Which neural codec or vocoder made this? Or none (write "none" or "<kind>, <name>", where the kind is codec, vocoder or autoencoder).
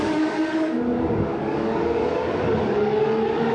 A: codec, DAC